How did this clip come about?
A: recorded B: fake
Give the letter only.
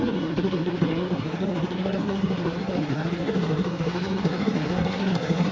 B